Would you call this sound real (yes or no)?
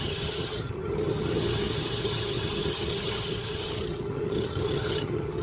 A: no